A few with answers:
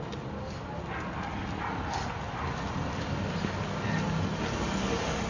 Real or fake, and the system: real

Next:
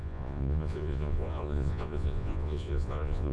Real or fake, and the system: fake, vocoder, Vocos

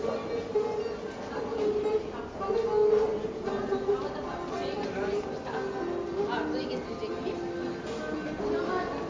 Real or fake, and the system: real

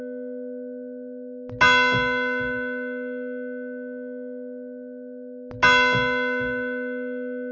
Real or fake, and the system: real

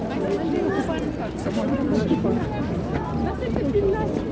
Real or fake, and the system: real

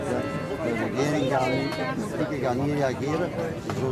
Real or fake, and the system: real